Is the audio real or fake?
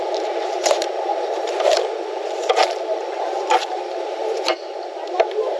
fake